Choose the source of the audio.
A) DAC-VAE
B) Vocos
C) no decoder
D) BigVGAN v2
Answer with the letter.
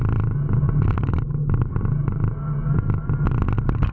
C